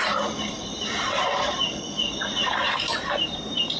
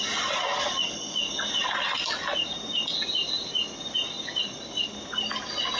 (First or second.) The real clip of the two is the second